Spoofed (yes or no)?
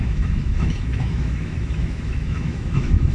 yes